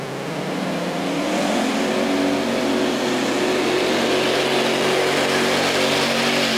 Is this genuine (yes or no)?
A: yes